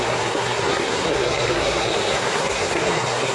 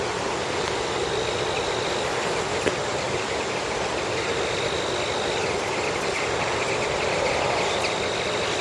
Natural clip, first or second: second